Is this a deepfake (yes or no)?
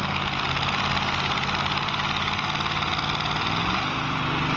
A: no